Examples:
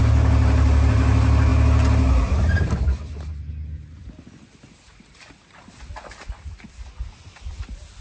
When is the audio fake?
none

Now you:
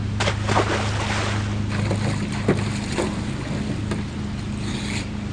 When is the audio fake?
none

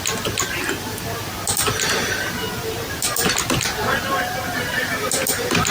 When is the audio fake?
none

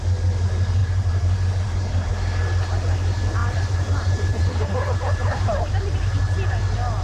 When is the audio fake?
0.8-2.1 (vocoder, BigVGAN v2); 3.4-6.0

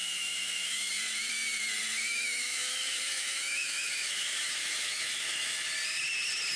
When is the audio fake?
0.0-0.9 (autoencoder, DAC-VAE); 2.1-5.7

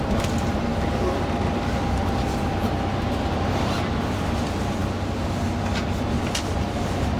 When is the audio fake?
none

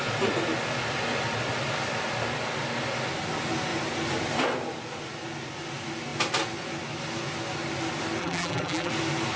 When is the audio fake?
8.2-8.9 (vocoder, BigVGAN v2)